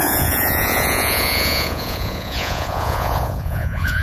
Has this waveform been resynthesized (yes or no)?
yes